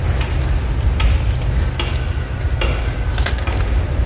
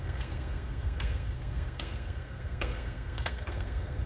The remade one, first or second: second